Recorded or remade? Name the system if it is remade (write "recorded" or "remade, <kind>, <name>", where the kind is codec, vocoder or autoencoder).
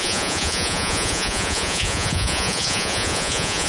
remade, vocoder, Vocos